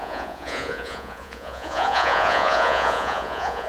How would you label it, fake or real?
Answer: fake